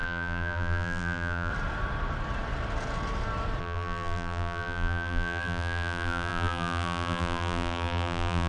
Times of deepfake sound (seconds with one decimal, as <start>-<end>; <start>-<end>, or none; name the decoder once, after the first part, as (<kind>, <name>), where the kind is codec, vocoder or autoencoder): 0.0-1.5 (vocoder, BigVGAN v2); 3.6-8.5